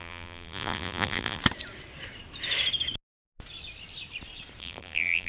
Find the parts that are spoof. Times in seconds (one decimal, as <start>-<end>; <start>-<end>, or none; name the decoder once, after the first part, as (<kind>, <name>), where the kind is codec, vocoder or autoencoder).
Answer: 0.0-1.4 (vocoder, BigVGAN v2); 4.6-5.3